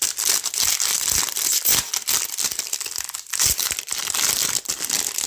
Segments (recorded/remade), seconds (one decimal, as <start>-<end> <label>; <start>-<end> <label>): 0.0-5.3 recorded